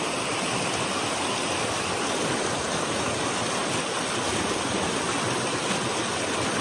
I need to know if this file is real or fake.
real